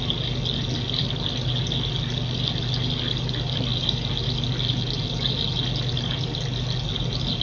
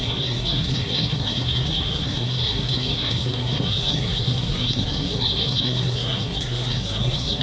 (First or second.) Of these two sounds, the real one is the first